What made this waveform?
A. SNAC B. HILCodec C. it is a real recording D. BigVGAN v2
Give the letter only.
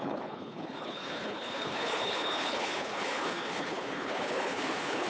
B